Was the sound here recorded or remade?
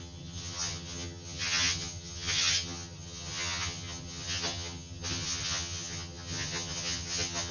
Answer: remade